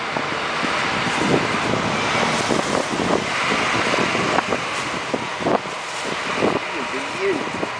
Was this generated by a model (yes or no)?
no